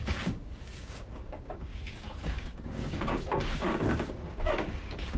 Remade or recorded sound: remade